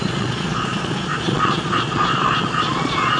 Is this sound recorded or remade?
remade